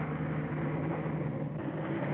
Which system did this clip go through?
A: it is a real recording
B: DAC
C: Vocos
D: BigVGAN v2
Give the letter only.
A